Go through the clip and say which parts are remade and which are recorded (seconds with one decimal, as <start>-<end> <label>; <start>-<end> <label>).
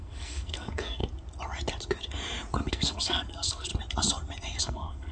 0.0-1.0 remade; 1.0-2.7 recorded; 2.7-3.7 remade; 3.7-4.6 recorded; 4.6-5.1 remade